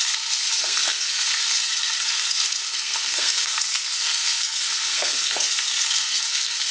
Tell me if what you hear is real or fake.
fake